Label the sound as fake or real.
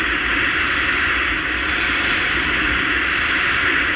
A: fake